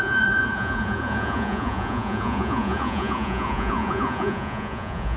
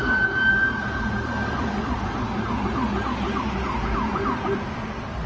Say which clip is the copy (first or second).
first